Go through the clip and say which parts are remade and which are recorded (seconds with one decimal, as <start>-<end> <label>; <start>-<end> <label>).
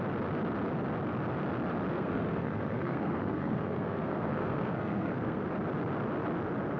0.0-1.9 recorded; 1.9-5.5 remade; 5.5-6.8 recorded